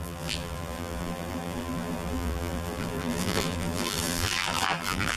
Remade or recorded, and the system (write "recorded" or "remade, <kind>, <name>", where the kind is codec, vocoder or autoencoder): remade, vocoder, BigVGAN v2